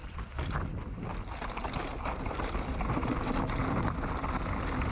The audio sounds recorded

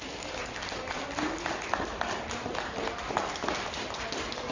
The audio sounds recorded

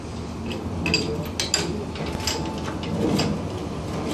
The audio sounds recorded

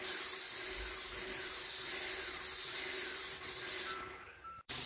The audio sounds remade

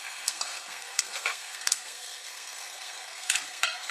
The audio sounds remade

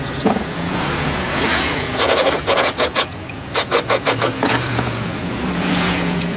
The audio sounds remade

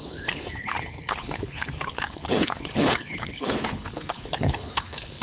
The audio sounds remade